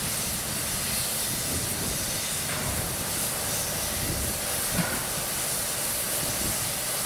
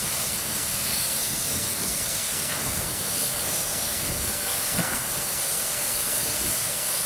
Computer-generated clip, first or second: second